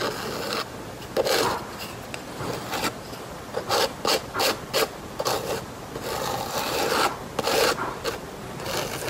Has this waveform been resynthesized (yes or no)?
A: no